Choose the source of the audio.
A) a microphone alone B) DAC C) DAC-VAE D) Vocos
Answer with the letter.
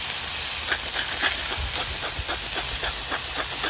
A